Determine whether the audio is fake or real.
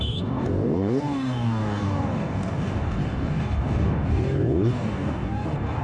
fake